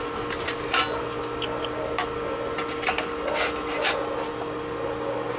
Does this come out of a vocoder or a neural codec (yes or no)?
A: no